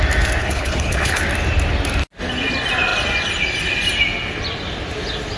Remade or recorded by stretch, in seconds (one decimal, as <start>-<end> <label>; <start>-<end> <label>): 0.0-0.4 recorded; 0.4-1.2 remade; 1.2-5.4 recorded